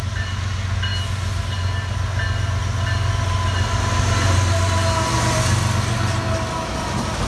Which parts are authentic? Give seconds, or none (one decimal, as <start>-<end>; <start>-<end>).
0.0-7.3